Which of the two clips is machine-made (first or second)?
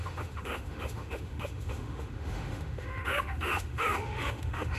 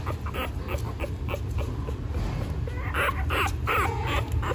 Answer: first